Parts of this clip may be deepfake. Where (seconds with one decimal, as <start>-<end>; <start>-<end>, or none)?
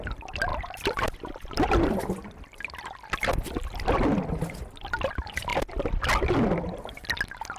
none